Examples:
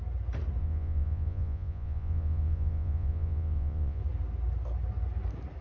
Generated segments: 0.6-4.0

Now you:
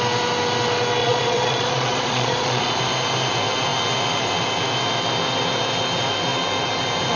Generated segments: 1.0-2.7

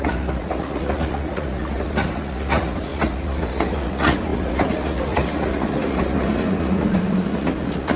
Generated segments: 0.0-8.0

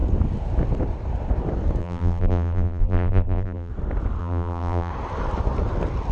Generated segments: 1.8-3.7; 4.2-4.9

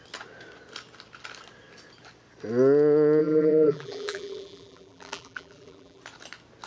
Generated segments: 3.2-6.0

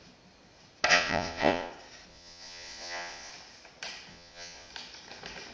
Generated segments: 0.9-1.7; 2.1-3.3; 4.1-4.7

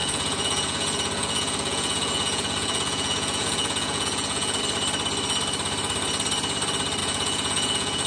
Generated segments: 0.0-4.6; 7.0-8.1